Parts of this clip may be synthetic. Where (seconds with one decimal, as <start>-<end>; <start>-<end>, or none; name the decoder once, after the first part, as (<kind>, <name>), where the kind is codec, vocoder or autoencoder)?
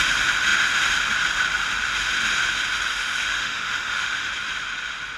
2.9-4.3 (autoencoder, DAC-VAE)